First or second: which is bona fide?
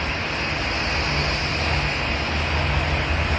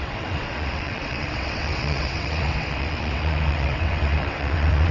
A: first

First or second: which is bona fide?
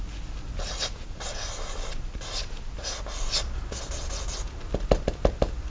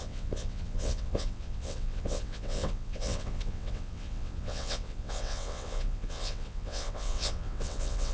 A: first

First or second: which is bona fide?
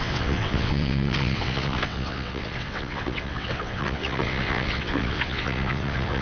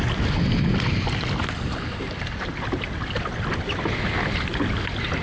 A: second